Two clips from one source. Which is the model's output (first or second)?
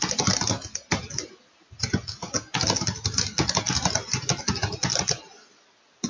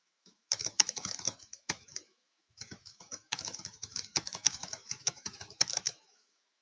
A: second